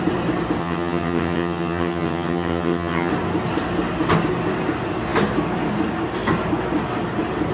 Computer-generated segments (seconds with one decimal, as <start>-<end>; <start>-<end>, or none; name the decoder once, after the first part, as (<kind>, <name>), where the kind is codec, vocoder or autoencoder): 0.6-3.1 (vocoder, HiFi-GAN)